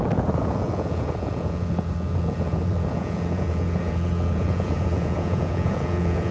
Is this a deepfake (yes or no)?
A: yes